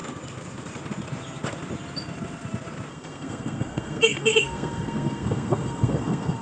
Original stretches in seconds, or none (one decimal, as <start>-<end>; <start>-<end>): 0.0-2.9